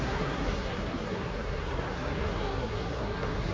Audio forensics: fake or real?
fake